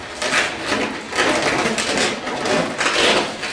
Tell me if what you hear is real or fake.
real